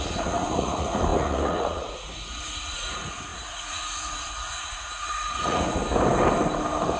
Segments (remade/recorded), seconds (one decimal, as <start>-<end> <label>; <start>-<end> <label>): 0.0-5.8 remade; 5.8-7.0 recorded

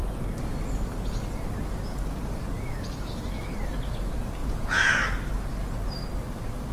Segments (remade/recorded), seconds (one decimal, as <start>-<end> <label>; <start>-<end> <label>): 0.0-4.4 recorded; 4.4-5.0 remade; 5.0-6.7 recorded